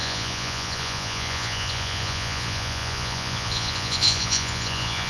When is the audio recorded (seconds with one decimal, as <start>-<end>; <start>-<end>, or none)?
none